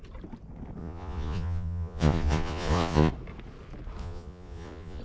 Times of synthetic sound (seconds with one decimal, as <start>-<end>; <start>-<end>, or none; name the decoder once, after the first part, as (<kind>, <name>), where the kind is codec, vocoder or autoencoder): 0.8-3.1 (vocoder, Vocos); 4.0-5.0